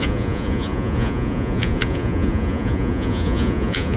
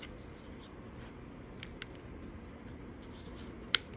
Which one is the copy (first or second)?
first